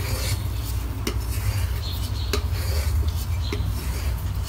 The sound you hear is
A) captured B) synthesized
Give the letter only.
A